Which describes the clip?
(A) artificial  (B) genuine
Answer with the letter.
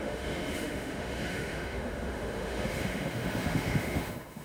A